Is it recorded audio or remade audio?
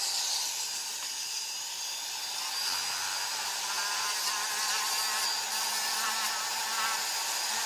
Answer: remade